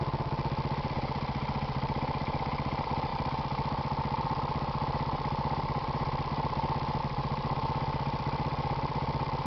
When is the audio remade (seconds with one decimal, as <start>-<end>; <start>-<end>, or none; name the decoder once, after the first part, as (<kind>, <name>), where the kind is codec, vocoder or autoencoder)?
none